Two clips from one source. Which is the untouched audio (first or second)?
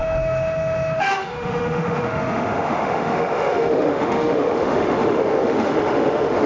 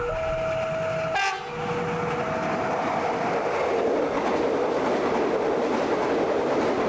second